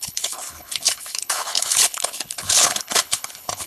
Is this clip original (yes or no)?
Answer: no